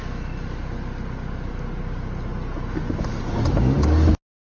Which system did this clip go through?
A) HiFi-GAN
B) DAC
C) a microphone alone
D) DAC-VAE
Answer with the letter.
C